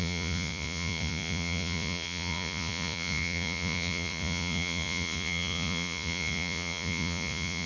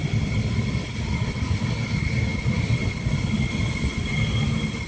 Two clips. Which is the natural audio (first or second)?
second